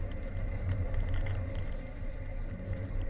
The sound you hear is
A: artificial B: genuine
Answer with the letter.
A